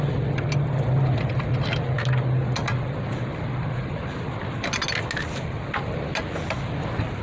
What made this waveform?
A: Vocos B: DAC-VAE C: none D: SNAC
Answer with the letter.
C